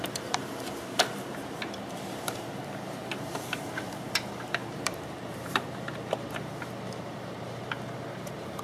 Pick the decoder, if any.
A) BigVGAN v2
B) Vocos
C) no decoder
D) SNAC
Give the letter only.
A